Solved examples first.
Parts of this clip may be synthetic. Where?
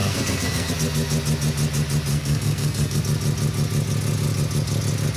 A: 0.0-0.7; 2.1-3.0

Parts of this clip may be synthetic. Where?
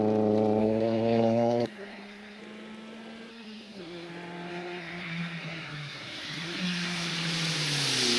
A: 0.6-2.4; 3.3-4.1; 4.5-7.1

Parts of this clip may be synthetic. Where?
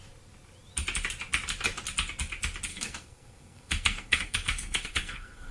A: 2.7-5.5